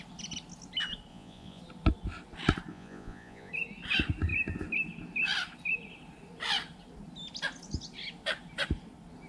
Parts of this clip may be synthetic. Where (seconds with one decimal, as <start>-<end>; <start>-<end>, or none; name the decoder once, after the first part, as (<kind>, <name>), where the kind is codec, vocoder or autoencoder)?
1.1-1.6 (vocoder, Vocos); 2.7-3.5